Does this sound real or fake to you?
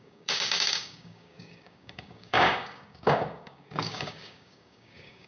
fake